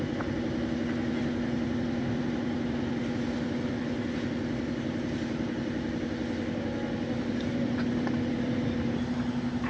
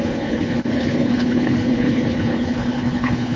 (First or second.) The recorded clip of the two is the first